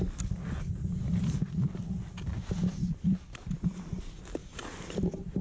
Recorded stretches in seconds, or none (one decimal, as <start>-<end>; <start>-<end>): 0.0-2.3; 4.0-4.4